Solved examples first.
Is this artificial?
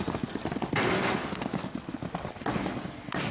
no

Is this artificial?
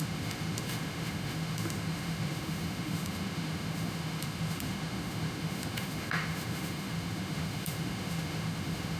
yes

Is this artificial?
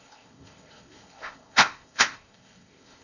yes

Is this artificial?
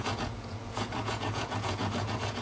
yes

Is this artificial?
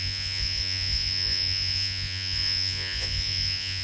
yes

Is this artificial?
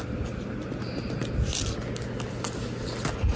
no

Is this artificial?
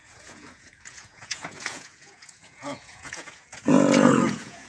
yes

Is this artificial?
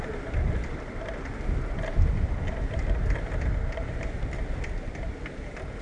no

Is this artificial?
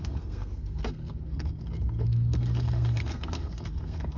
yes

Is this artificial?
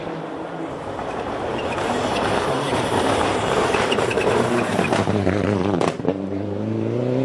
yes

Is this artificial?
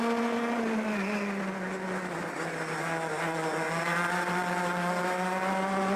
no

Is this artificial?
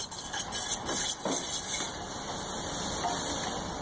no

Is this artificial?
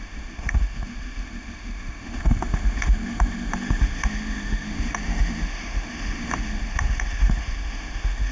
yes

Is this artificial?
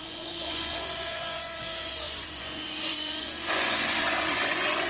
yes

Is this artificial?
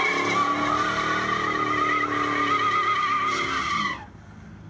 no